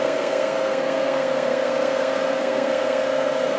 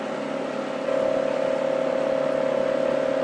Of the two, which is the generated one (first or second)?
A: first